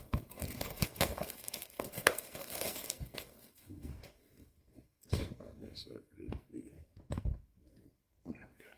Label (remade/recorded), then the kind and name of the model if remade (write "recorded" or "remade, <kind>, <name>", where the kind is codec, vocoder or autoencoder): remade, codec, SNAC